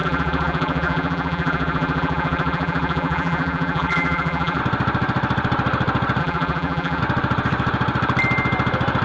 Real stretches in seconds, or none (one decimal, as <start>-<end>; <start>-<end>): 4.6-6.2; 7.0-9.0